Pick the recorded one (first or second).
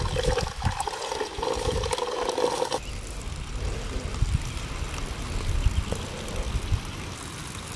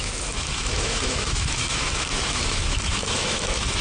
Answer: first